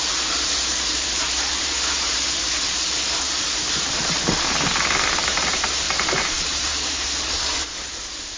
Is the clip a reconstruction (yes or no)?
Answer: yes